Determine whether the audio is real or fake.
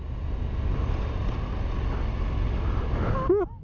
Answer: real